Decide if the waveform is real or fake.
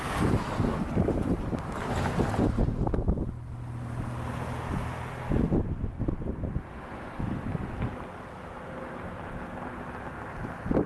real